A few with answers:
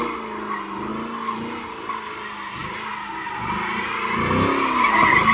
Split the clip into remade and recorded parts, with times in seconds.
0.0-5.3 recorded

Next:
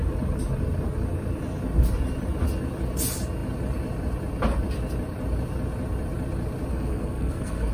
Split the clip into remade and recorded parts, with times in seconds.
0.0-6.7 recorded; 6.7-7.7 remade

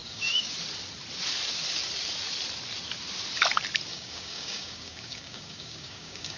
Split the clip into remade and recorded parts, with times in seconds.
0.0-0.5 remade; 0.5-3.9 recorded; 3.9-6.4 remade

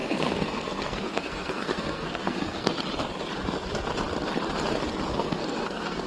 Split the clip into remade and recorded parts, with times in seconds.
0.0-2.7 remade; 2.7-5.1 recorded; 5.1-6.1 remade

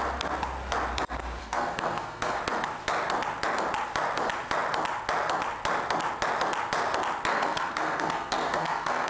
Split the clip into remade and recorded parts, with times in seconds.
0.0-1.4 recorded; 1.4-2.4 remade; 2.4-7.3 recorded; 7.3-9.1 remade

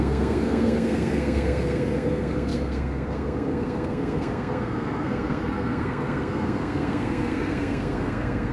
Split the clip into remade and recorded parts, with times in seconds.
0.0-8.5 remade

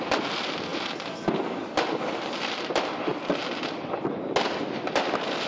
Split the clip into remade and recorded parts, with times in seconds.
0.0-5.5 recorded